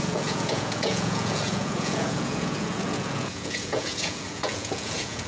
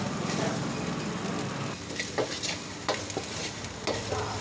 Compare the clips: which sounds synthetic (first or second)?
first